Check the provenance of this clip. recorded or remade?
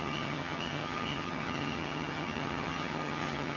remade